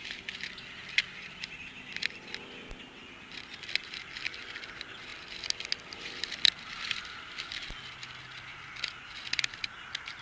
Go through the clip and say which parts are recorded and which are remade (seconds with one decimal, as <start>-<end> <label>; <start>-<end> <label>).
0.0-10.2 recorded